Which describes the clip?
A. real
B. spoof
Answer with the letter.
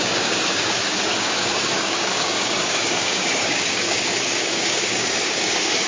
B